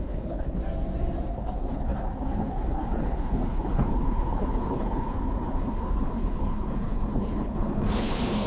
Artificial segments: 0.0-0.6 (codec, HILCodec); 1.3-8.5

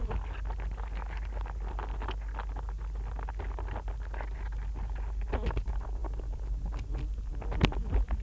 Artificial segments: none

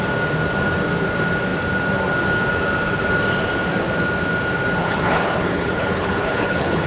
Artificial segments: 4.8-6.9 (codec, HILCodec)

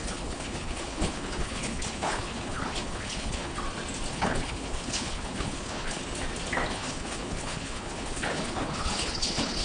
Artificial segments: 0.0-3.5 (codec, HILCodec); 4.1-6.0; 6.7-9.6

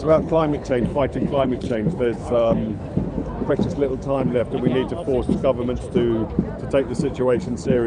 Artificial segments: 0.0-2.8 (codec, HILCodec); 3.5-4.4; 6.8-7.9

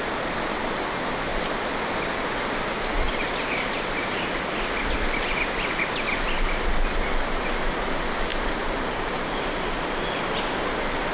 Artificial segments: none